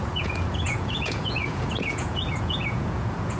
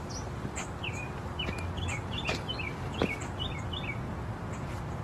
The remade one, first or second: first